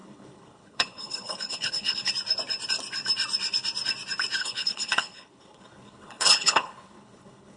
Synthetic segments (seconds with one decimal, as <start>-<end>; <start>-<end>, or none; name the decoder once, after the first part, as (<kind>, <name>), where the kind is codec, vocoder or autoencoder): 0.0-2.1 (codec, HILCodec); 4.4-7.6